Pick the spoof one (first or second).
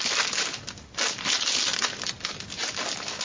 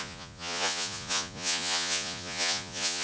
second